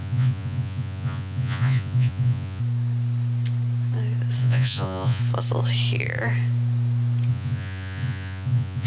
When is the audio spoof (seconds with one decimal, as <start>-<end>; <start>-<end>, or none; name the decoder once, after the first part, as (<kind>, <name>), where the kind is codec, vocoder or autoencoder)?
0.0-2.6 (vocoder, Vocos); 4.4-5.2; 7.3-8.9